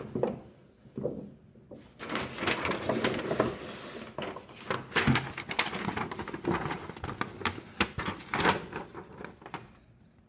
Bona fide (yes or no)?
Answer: yes